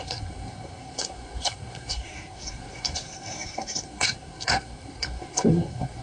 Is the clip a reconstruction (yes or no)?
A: yes